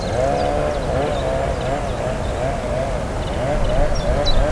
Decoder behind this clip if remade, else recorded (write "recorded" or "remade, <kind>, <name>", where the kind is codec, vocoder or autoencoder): recorded